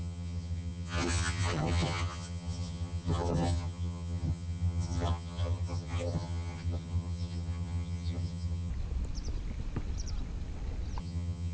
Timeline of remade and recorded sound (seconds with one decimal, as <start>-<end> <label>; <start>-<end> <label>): 0.0-8.7 remade; 8.7-11.0 recorded; 11.0-11.5 remade